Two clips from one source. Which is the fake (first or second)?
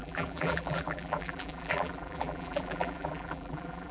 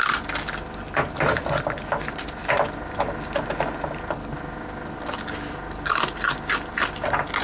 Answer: first